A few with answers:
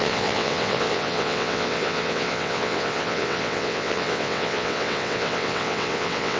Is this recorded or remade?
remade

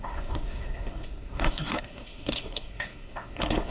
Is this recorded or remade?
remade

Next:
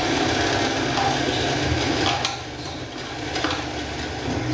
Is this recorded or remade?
recorded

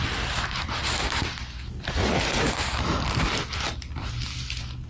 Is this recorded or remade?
recorded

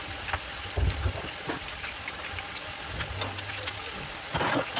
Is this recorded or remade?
recorded